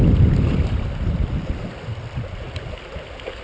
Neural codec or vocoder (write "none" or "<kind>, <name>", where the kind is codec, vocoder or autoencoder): none